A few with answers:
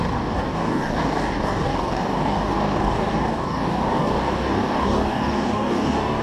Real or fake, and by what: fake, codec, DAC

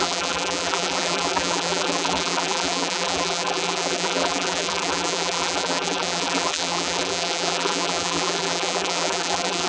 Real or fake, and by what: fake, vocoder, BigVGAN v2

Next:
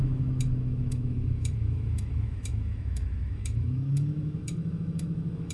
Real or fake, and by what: fake, autoencoder, DAC-VAE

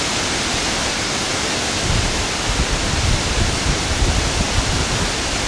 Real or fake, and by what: fake, vocoder, BigVGAN v2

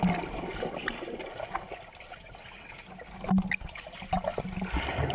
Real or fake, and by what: real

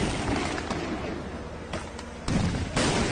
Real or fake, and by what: real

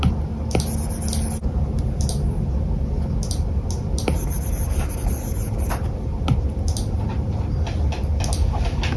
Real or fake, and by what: real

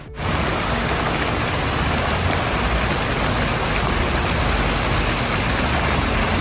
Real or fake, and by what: real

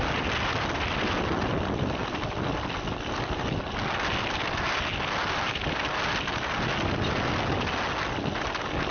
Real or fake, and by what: real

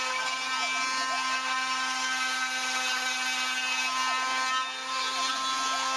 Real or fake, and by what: real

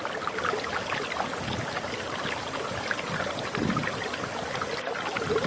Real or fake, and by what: real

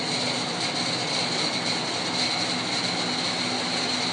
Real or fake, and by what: real